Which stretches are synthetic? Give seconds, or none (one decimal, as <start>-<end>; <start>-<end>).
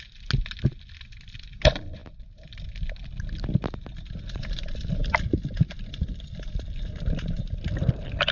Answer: none